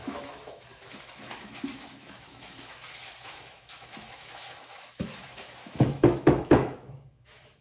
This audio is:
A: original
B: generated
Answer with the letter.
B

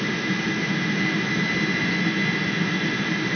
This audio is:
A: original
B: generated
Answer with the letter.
A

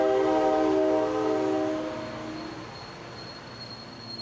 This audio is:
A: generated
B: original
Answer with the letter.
B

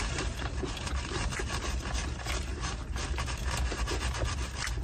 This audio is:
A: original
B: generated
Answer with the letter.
A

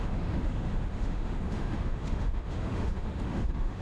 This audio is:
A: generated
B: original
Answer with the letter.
A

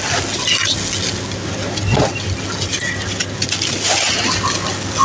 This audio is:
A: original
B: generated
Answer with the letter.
A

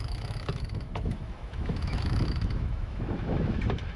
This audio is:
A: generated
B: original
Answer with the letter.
A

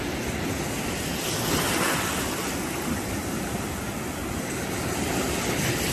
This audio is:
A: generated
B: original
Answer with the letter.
B